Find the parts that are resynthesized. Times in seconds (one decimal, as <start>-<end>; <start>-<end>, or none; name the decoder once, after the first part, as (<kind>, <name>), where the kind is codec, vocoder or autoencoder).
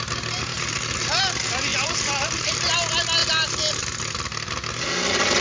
0.5-1.2 (vocoder, BigVGAN v2); 1.7-2.7; 3.2-3.7